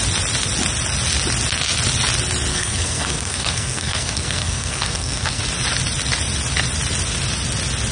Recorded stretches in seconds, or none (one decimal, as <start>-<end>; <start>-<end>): 0.0-2.5; 5.4-7.9